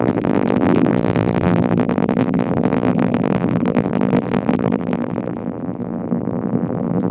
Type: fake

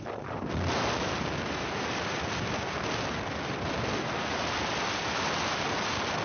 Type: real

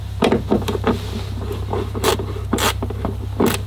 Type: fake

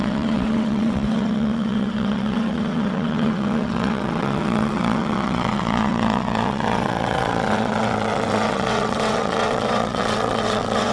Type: fake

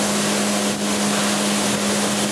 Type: real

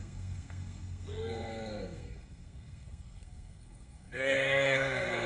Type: fake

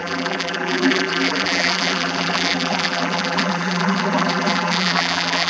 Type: fake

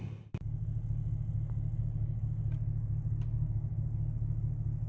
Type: real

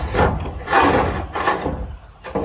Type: real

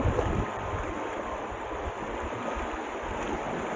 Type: fake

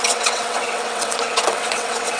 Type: fake